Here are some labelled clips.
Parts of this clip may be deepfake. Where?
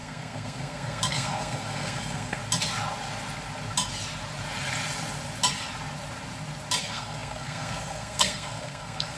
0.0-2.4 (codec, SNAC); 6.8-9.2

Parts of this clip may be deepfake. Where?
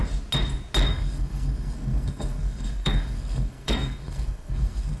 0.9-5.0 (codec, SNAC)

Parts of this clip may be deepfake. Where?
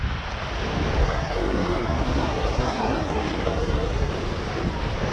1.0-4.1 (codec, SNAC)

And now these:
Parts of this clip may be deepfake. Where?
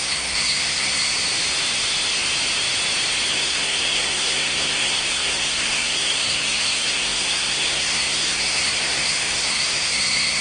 0.0-1.1 (codec, SNAC); 3.3-10.4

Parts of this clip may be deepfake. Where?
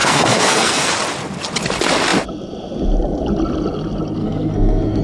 0.0-0.9 (codec, SNAC); 4.2-5.0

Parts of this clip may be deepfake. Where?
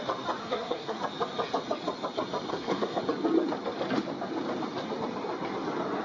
0.4-1.0 (codec, SNAC); 2.5-3.0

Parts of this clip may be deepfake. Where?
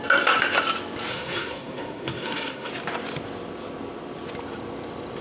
1.1-2.7 (codec, SNAC)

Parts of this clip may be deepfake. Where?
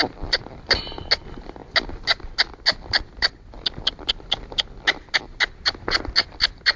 none